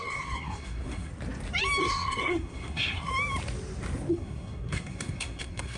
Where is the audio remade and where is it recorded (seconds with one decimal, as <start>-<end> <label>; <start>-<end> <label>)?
0.0-1.1 remade; 1.1-1.8 recorded; 1.8-3.1 remade; 3.1-4.1 recorded; 4.1-5.8 remade